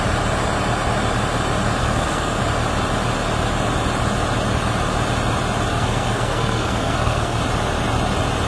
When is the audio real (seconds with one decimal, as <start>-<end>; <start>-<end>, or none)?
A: 0.0-1.8; 2.4-5.7; 7.4-8.5